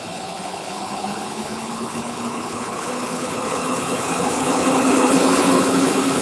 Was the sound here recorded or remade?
remade